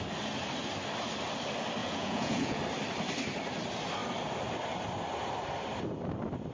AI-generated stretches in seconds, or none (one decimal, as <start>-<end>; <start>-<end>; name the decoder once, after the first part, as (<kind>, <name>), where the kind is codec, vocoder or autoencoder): 1.8-2.6 (vocoder, Vocos)